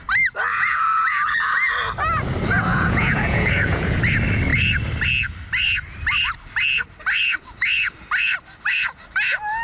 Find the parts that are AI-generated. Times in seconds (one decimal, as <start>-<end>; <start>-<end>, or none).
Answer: 0.5-1.7; 2.7-4.0